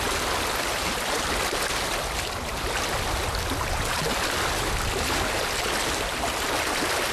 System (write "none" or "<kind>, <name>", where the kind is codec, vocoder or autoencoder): none